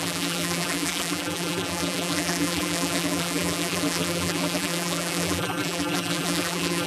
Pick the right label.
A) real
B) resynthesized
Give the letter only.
B